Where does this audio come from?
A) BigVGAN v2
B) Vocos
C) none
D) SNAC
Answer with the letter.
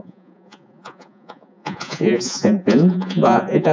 B